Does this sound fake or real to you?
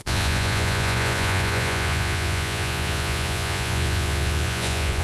fake